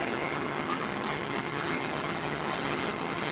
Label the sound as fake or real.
fake